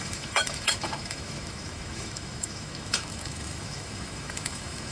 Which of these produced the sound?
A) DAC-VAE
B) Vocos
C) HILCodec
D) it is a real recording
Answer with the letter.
A